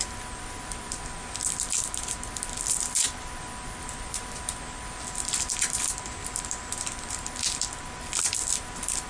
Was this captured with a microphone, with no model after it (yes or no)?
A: no